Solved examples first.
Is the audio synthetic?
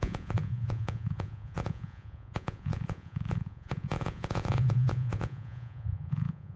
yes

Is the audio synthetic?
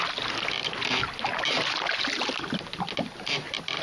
no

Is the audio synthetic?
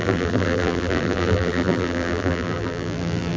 yes